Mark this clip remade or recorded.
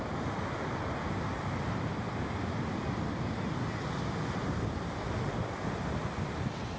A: recorded